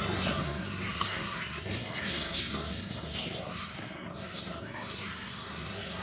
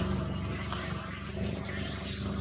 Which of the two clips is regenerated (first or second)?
first